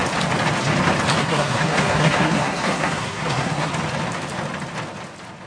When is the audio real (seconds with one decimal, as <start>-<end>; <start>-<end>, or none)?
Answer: 0.0-1.2; 3.7-5.5